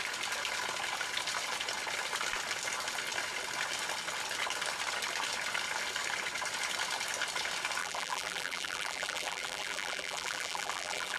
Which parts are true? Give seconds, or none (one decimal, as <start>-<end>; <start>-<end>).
0.0-7.8